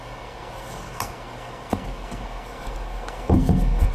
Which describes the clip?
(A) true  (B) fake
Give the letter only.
B